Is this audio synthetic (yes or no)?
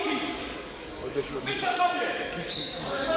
yes